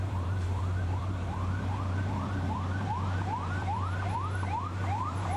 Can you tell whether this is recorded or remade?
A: remade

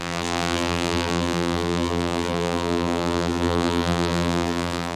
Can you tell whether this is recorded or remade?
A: remade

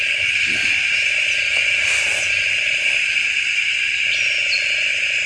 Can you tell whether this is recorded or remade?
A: recorded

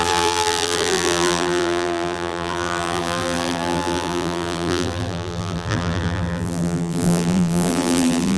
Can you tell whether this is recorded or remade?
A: remade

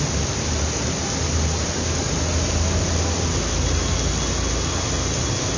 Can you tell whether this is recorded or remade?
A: recorded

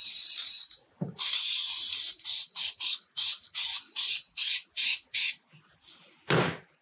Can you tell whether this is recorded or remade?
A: remade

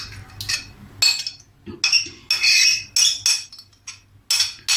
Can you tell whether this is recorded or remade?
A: recorded